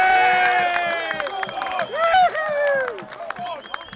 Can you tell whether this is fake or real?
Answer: real